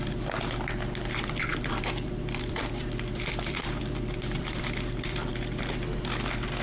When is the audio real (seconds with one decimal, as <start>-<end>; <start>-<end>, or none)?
0.0-1.5; 5.3-6.6